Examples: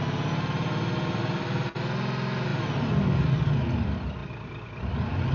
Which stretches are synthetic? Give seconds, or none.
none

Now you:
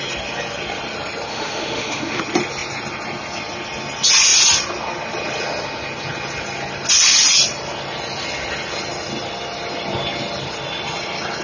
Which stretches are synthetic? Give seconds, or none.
1.3-2.2

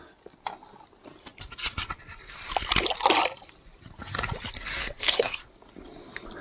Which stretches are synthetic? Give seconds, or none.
4.8-5.4

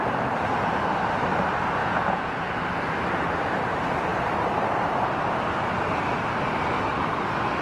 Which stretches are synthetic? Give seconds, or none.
1.8-2.5

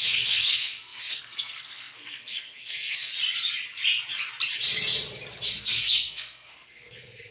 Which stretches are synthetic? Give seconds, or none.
0.0-3.1; 5.6-7.3

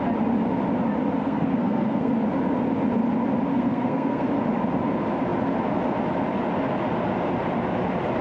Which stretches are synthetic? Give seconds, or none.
1.2-2.1; 3.5-4.3

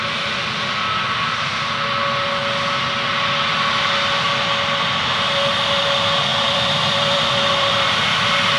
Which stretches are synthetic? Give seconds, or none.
6.3-8.6